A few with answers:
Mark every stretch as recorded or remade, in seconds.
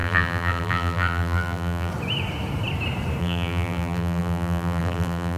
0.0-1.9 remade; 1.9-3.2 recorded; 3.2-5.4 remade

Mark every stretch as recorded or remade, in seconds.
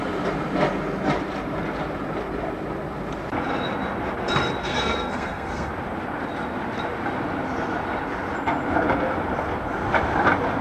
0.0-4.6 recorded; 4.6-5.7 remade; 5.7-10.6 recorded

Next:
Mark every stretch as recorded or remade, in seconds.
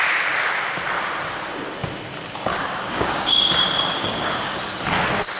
0.0-2.5 recorded; 2.5-3.6 remade; 3.6-4.0 recorded; 4.0-4.6 remade; 4.6-5.4 recorded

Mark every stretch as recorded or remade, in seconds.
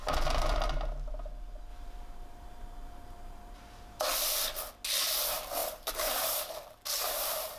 0.0-1.7 recorded; 1.7-4.0 remade; 4.0-5.6 recorded; 5.6-7.6 remade